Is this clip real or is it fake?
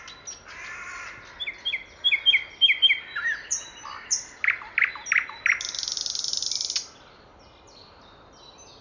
real